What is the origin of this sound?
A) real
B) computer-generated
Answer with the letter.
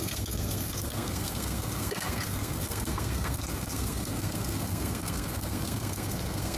B